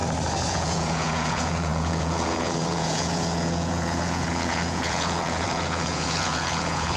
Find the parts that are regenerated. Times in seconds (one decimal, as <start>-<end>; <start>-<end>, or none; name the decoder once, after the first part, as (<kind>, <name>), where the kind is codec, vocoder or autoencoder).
0.5-7.0 (vocoder, Vocos)